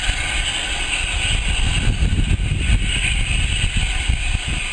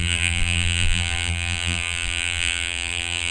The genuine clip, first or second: first